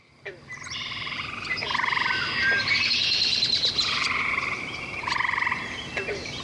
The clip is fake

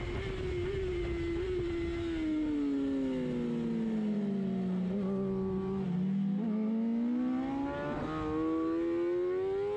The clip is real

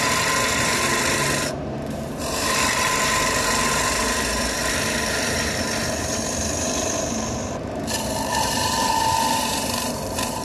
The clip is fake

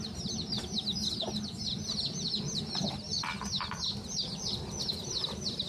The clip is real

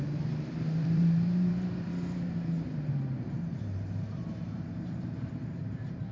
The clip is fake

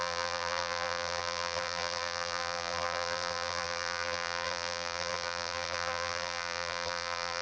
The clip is fake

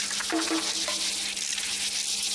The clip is fake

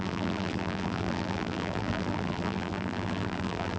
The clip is fake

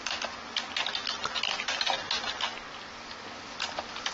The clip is real